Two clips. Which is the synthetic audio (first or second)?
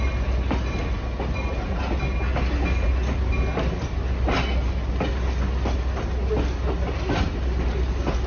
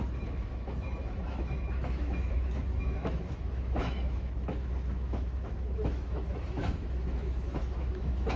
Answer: second